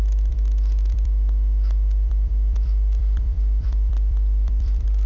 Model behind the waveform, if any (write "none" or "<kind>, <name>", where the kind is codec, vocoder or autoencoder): vocoder, BigVGAN v2